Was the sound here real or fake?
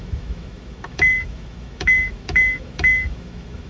fake